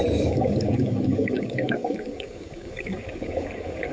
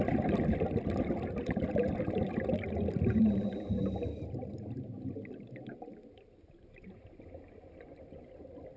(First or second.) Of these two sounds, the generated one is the first